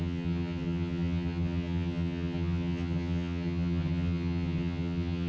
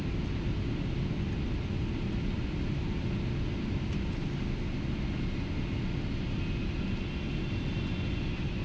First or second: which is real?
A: second